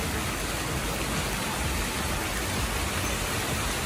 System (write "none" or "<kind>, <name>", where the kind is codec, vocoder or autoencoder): none